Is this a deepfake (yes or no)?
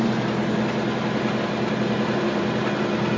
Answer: no